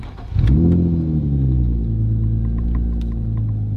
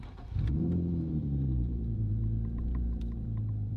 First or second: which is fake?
second